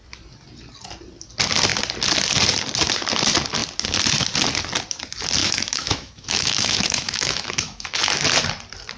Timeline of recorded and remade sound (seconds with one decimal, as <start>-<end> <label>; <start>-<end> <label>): 0.0-5.4 recorded; 5.4-8.0 remade; 8.0-9.0 recorded